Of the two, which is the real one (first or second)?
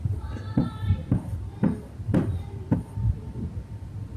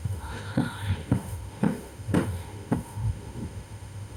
first